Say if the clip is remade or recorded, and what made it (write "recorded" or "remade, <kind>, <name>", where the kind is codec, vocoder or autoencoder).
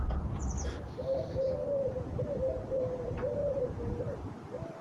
remade, vocoder, BigVGAN v2